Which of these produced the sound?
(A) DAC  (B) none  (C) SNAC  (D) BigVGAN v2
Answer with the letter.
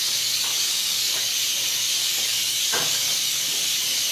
A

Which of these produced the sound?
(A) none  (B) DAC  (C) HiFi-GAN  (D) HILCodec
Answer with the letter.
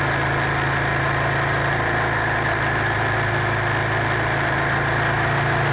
A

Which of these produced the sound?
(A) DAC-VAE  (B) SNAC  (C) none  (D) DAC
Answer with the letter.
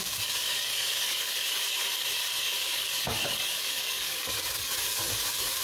D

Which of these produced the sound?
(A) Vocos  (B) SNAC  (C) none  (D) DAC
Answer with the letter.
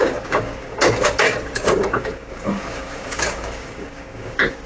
D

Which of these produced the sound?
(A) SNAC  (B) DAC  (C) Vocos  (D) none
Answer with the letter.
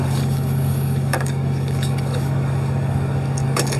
B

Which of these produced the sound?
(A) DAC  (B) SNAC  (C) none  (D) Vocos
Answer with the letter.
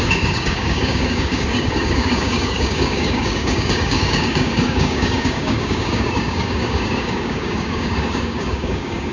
A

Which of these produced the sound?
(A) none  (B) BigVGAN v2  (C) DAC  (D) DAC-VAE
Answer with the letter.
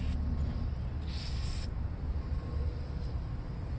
A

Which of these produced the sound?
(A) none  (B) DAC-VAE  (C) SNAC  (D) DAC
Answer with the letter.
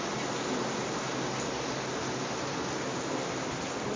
A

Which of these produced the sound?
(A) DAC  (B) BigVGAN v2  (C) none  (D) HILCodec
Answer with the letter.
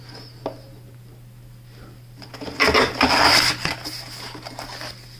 C